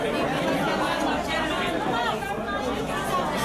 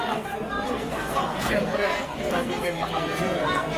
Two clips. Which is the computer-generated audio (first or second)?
second